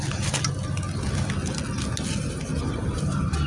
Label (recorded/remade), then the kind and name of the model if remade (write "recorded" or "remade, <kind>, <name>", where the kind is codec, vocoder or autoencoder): recorded